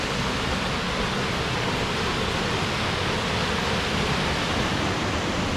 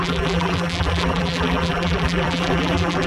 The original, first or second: first